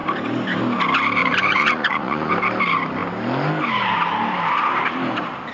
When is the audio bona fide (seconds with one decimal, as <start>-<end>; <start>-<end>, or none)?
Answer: 0.0-1.2; 2.3-5.5